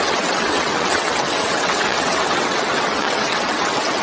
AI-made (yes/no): yes